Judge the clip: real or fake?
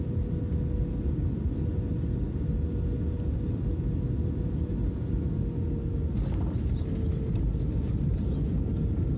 real